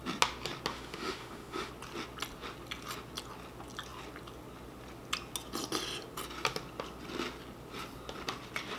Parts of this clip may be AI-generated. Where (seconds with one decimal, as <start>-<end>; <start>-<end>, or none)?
0.7-1.7